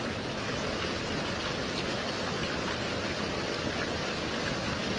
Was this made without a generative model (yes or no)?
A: yes